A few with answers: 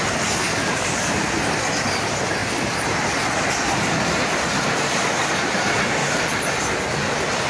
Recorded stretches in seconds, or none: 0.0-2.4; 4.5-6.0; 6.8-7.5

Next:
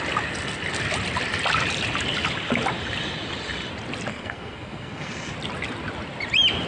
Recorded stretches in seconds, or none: 0.0-4.1; 5.3-6.7

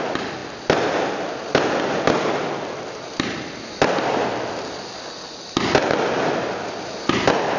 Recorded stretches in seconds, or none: 0.0-7.6